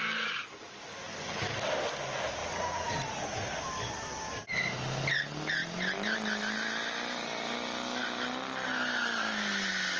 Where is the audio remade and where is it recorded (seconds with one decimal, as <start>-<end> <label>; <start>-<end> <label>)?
0.0-2.4 recorded; 2.4-3.6 remade; 3.6-10.0 recorded